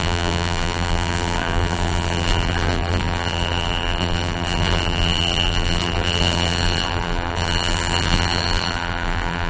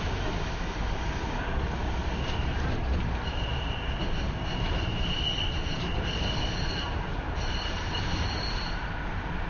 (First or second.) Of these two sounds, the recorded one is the second